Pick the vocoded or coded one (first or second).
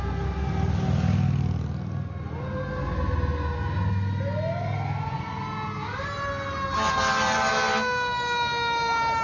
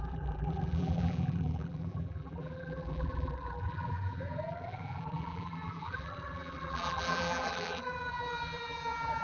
second